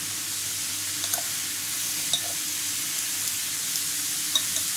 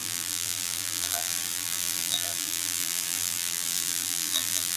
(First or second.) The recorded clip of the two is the first